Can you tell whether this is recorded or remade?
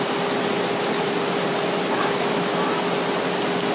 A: recorded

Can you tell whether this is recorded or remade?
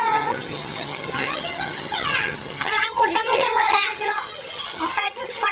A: remade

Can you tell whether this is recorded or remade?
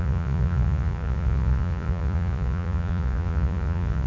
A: remade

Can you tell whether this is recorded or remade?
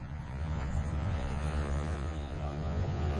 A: remade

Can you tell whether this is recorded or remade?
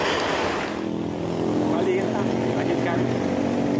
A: recorded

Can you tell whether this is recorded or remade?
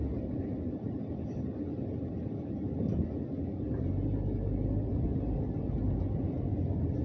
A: recorded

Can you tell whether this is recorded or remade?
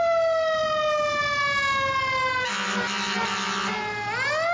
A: recorded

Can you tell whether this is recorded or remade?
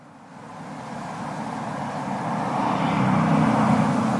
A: remade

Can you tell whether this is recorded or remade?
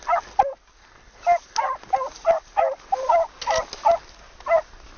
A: recorded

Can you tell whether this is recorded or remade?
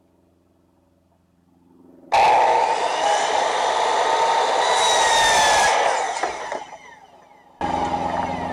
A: recorded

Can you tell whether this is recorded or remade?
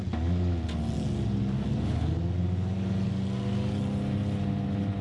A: recorded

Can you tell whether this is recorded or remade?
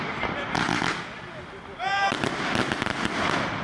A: recorded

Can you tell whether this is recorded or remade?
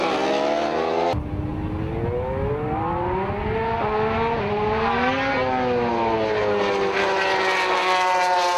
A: recorded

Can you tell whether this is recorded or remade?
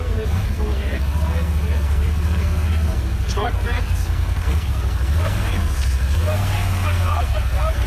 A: remade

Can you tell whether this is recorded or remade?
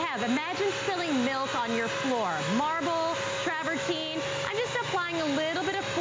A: recorded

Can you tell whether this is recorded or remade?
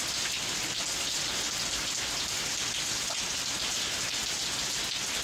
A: recorded